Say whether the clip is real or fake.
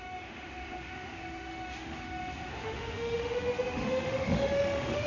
fake